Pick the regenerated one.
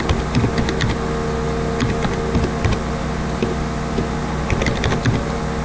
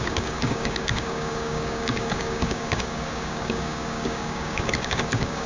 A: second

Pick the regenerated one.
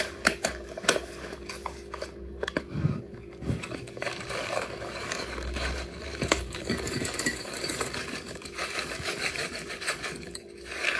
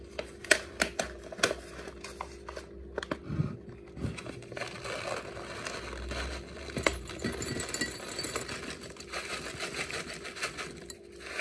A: first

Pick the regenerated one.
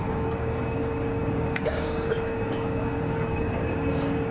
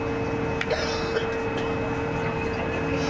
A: first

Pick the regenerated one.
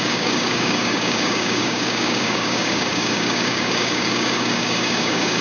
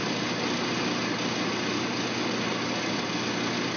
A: first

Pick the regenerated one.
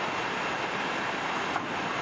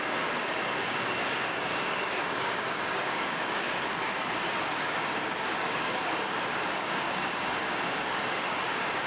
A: second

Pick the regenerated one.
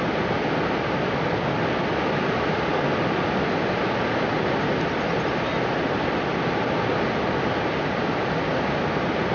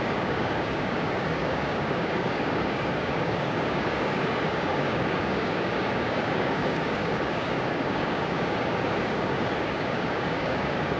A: second